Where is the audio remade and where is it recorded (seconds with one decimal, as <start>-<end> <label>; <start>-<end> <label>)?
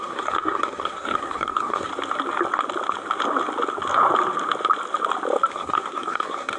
0.0-1.9 remade; 1.9-5.5 recorded; 5.5-6.6 remade